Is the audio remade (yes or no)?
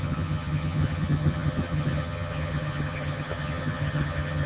yes